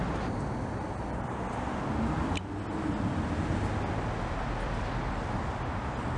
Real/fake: real